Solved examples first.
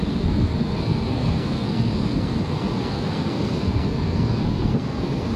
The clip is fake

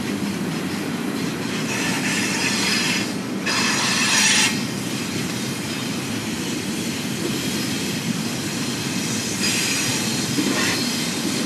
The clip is fake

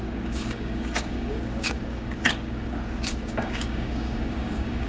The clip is fake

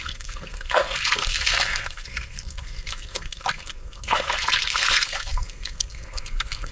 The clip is fake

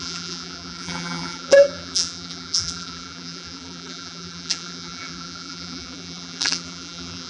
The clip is fake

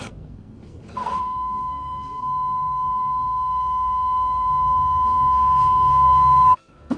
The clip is fake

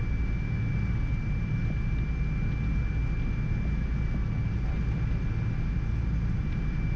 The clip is real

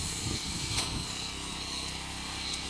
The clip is fake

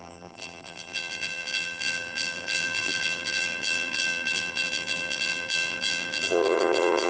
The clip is fake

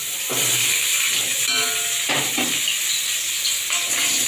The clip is real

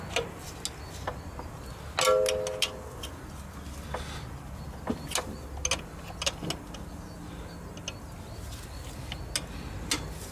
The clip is real